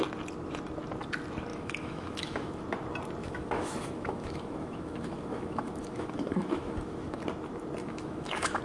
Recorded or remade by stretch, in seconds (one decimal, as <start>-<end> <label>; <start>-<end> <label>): 0.0-1.5 recorded; 1.5-2.6 remade; 2.6-3.2 recorded; 3.2-7.2 remade; 7.2-7.8 recorded; 7.8-8.6 remade